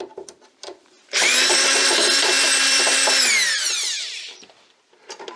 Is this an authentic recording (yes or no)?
no